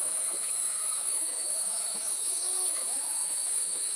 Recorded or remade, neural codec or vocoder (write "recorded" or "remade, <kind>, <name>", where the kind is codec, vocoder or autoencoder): remade, autoencoder, DAC-VAE